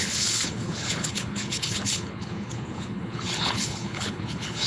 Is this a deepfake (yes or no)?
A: yes